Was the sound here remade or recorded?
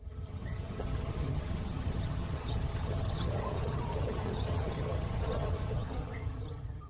remade